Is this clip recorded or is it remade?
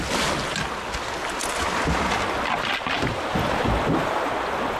recorded